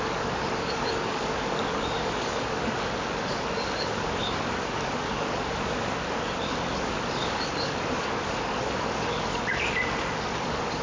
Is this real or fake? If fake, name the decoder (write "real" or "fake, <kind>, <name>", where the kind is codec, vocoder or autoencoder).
fake, codec, DAC